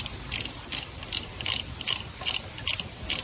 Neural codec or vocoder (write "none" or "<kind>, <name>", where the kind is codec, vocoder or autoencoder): vocoder, BigVGAN v2